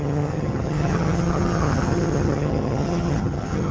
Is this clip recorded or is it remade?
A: remade